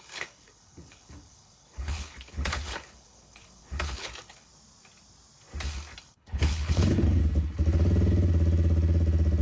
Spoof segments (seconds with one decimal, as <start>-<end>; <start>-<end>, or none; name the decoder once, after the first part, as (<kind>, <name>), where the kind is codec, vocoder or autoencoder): 0.0-4.5 (codec, HILCodec); 6.0-7.2